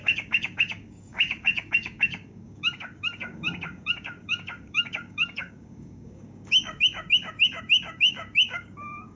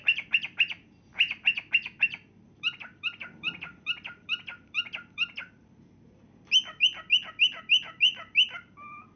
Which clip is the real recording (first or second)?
second